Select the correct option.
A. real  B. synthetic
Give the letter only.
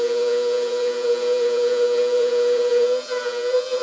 B